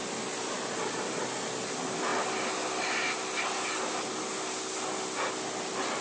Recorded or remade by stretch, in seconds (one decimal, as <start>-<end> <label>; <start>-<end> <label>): 0.0-6.0 recorded

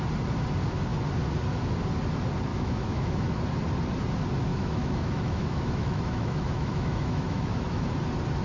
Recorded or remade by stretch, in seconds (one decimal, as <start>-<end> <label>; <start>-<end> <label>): 0.0-2.5 recorded; 2.5-3.4 remade; 3.4-4.5 recorded; 4.5-7.9 remade; 7.9-8.4 recorded

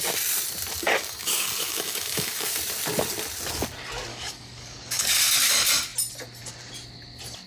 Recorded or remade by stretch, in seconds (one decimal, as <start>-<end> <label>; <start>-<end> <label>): 0.0-0.8 recorded; 0.8-2.5 remade; 2.5-4.1 recorded; 4.1-5.2 remade; 5.2-7.5 recorded

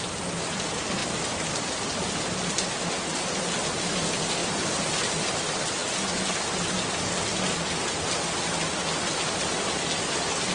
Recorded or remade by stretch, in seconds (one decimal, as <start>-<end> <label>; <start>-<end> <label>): 0.0-1.0 recorded; 1.0-2.9 remade; 2.9-4.4 recorded; 4.4-4.9 remade; 4.9-10.5 recorded